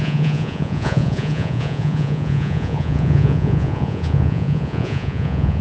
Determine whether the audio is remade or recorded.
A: remade